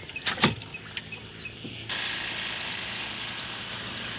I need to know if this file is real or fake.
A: real